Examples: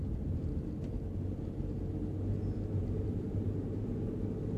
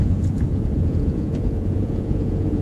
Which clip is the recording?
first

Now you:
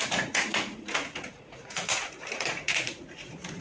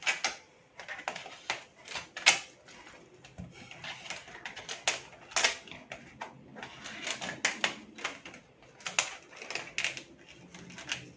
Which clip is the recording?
second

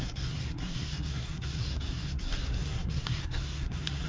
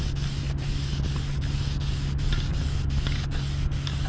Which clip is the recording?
second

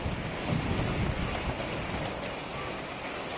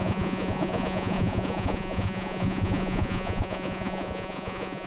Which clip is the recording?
first